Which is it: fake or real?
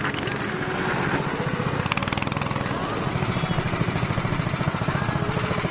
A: real